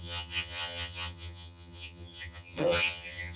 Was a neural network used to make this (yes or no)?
yes